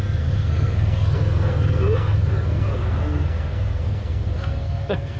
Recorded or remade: remade